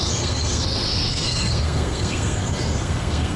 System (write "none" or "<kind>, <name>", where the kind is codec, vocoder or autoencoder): codec, SNAC